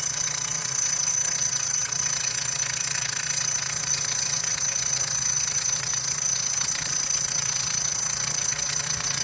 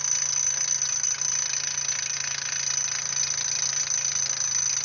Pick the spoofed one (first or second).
first